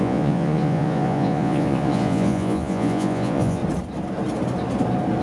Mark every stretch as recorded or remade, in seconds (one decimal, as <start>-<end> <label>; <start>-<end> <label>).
0.0-3.6 remade; 3.6-5.2 recorded